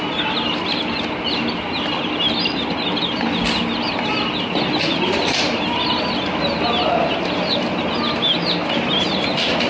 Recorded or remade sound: recorded